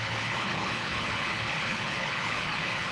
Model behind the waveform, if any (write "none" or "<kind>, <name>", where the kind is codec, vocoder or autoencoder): codec, HILCodec